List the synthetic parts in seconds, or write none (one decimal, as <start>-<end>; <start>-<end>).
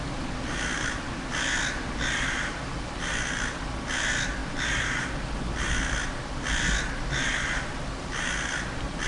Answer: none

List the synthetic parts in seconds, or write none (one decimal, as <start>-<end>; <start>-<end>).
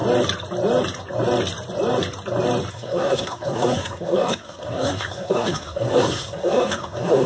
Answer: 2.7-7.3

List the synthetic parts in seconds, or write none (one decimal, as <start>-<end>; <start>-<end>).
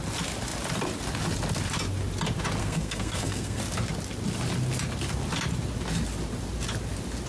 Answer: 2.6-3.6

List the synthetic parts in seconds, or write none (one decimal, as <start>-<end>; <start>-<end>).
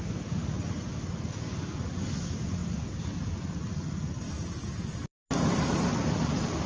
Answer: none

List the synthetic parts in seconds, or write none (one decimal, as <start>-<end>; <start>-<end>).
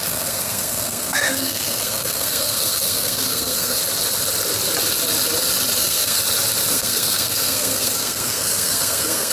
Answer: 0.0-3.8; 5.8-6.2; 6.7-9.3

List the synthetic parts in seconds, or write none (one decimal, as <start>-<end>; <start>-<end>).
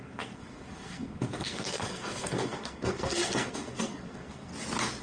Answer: 0.0-4.5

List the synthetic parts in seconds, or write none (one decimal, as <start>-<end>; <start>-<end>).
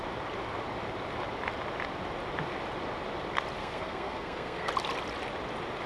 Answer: 3.6-4.7